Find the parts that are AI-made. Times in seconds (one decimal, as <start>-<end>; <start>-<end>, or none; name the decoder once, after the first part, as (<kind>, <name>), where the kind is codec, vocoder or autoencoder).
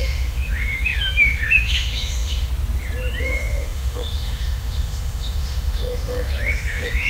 0.0-2.5 (autoencoder, DAC-VAE); 3.2-7.1